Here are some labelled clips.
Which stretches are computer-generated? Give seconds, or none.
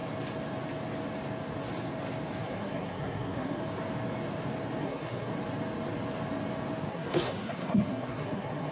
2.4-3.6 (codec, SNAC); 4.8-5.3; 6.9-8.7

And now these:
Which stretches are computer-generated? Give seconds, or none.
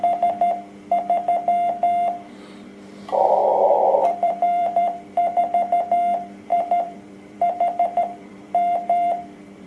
4.0-5.4 (vocoder, BigVGAN v2); 6.5-9.7